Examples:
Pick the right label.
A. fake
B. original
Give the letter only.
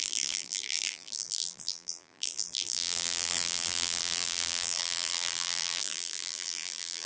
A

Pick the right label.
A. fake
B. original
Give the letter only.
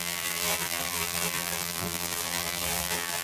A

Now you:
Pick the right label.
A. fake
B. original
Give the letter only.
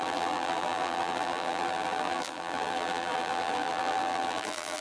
A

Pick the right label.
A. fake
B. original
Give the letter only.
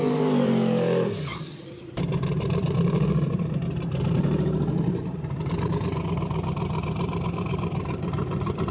A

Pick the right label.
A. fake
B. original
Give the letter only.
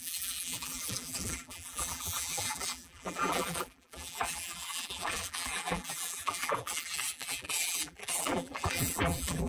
A